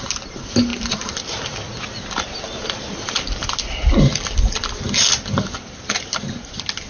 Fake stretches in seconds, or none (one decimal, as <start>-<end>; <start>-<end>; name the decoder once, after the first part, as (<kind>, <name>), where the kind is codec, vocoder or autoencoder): none